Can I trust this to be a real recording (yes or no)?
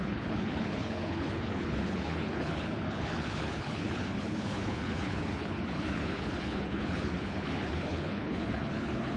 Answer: no